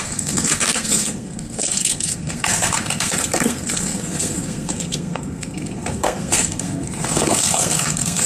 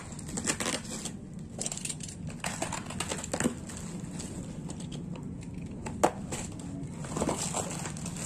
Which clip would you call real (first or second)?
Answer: second